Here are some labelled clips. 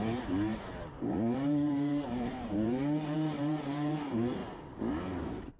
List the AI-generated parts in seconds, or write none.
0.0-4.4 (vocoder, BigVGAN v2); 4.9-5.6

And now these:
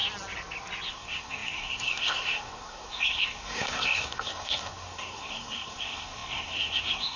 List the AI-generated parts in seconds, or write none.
0.9-7.2 (codec, SNAC)

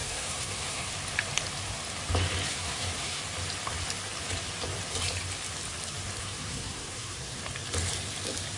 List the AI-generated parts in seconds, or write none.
0.0-0.9 (codec, SNAC); 2.5-3.2; 6.2-7.4

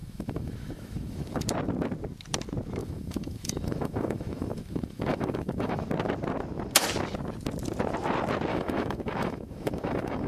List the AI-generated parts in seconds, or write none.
0.0-1.4 (autoencoder, DAC-VAE); 2.8-5.9; 8.5-10.3

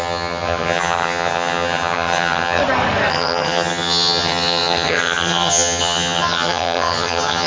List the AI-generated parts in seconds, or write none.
0.0-2.6 (vocoder, HiFi-GAN); 3.1-7.5

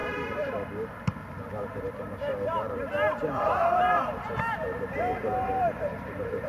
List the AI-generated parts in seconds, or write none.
0.0-0.9 (vocoder, BigVGAN v2); 2.3-6.5

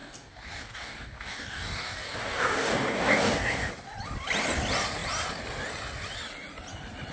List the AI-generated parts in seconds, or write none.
0.0-3.7 (codec, DAC)

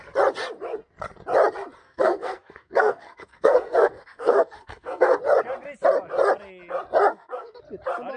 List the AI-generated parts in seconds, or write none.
1.8-5.2 (codec, SNAC); 7.1-7.6